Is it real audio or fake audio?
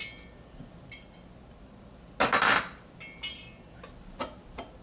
real